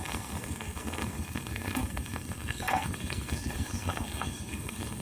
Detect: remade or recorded remade